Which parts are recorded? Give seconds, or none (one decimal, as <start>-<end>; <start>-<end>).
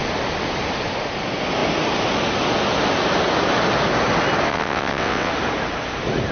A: 0.0-4.5; 5.3-6.3